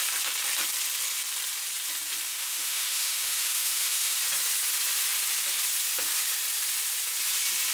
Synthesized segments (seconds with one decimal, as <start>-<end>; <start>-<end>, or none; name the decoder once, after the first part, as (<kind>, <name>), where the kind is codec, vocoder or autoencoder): 2.3-4.2 (autoencoder, DAC-VAE)